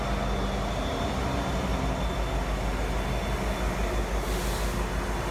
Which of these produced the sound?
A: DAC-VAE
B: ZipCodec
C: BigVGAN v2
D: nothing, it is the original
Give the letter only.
D